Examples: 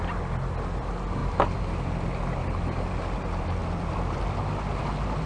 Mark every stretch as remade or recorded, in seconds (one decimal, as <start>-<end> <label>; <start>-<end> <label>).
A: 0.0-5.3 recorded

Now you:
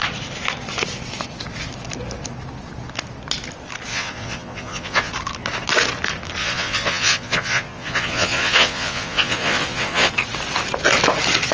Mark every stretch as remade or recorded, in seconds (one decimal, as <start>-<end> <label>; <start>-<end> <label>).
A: 0.0-3.9 recorded; 3.9-5.1 remade; 5.1-6.4 recorded; 6.4-10.1 remade; 10.1-11.5 recorded

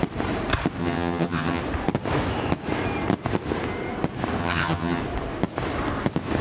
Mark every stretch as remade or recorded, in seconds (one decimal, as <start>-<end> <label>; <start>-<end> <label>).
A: 0.0-0.8 recorded; 0.8-1.6 remade; 1.6-4.4 recorded; 4.4-5.0 remade; 5.0-6.4 recorded